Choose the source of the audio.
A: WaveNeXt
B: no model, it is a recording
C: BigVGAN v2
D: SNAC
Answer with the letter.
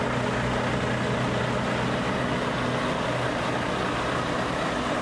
B